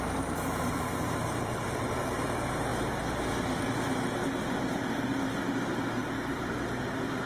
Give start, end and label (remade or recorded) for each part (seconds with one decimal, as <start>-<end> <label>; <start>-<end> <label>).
0.0-2.7 remade; 2.7-5.4 recorded; 5.4-7.3 remade